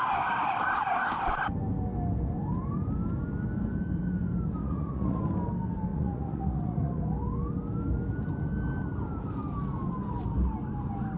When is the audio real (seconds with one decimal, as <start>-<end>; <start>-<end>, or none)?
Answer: 0.0-4.6; 5.2-5.9; 7.0-11.2